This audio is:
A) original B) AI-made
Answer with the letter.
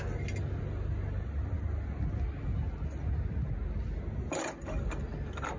A